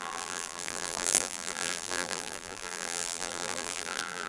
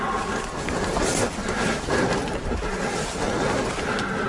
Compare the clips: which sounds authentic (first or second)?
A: second